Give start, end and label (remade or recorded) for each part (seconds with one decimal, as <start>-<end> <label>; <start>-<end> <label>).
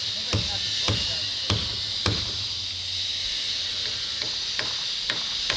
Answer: 0.0-5.6 recorded